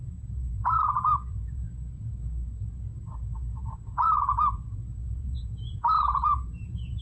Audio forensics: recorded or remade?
remade